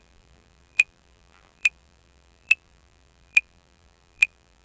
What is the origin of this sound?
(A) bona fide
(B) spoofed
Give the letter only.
B